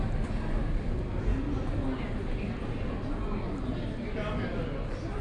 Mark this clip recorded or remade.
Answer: recorded